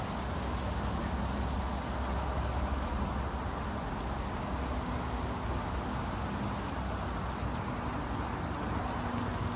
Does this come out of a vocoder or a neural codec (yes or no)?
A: no